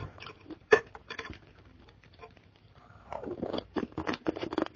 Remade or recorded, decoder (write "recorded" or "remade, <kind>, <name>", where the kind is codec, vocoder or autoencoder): remade, vocoder, BigVGAN v2